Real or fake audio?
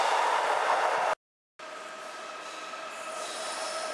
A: real